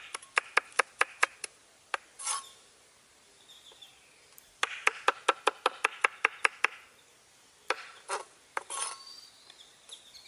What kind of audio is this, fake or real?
real